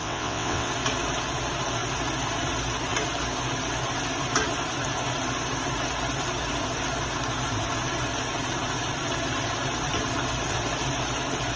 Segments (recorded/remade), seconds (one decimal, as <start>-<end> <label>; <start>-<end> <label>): 0.0-0.7 remade; 0.7-11.6 recorded